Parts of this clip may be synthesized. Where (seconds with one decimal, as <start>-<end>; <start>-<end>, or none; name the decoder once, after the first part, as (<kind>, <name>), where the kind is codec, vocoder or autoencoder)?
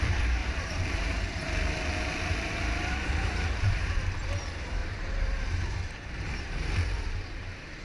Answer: 0.4-4.3 (vocoder, BigVGAN v2); 4.8-7.8